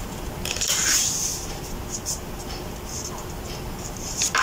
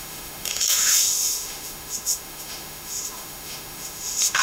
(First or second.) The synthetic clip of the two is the second